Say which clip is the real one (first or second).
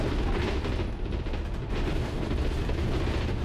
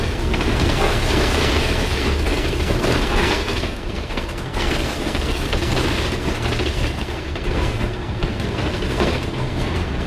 first